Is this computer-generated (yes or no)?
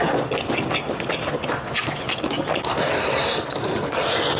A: no